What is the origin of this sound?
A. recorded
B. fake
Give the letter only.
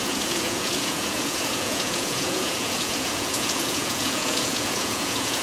B